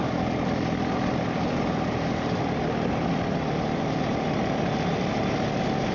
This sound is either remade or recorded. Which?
recorded